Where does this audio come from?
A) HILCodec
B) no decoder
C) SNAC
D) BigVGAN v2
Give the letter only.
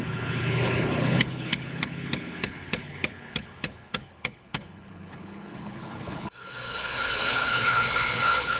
A